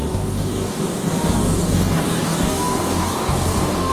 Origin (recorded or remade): remade